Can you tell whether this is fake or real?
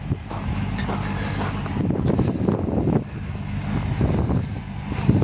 real